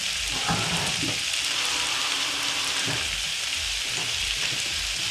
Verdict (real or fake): fake